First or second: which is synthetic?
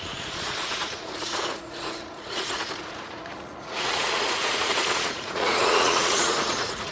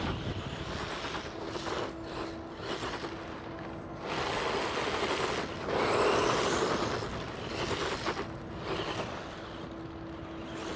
first